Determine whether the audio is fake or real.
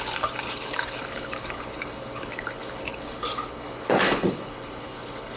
fake